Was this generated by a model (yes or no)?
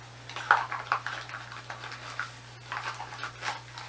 no